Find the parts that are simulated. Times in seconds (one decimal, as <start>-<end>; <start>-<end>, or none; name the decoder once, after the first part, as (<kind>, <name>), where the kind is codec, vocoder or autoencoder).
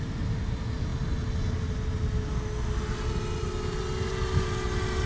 none